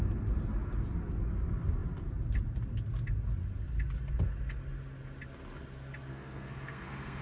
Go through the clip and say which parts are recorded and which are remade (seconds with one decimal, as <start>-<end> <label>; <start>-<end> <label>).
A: 0.0-6.1 recorded; 6.1-7.2 remade